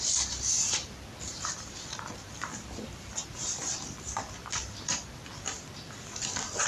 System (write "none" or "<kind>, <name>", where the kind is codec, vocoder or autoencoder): vocoder, BigVGAN v2